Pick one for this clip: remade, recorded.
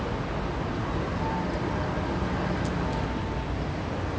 recorded